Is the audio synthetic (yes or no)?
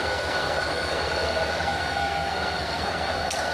yes